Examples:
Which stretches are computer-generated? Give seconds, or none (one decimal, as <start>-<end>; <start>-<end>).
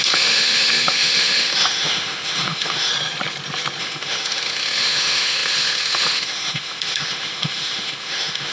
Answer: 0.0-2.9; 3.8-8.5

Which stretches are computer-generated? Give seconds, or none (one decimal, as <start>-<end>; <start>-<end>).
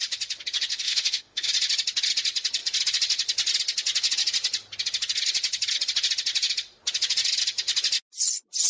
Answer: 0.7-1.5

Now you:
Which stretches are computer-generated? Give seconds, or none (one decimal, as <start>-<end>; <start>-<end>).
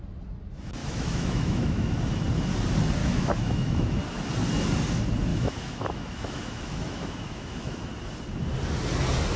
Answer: 0.8-1.9; 3.0-4.0; 5.3-7.9